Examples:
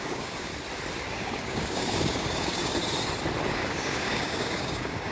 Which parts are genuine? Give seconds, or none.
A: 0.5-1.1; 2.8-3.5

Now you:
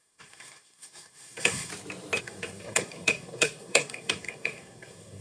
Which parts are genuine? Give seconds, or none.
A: 1.7-2.2